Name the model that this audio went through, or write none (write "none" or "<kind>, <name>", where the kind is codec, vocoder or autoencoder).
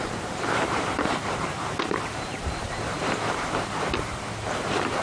vocoder, BigVGAN v2